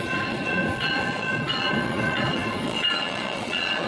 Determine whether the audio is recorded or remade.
remade